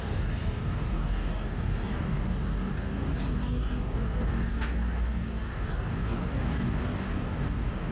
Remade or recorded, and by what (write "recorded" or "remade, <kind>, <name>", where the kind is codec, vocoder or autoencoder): remade, codec, DAC